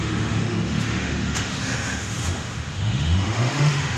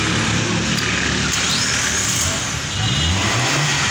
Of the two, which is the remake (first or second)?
first